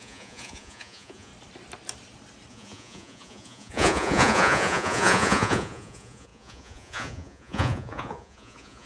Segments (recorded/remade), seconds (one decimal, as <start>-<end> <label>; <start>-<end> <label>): 0.0-1.3 remade; 1.3-2.5 recorded; 2.5-8.9 remade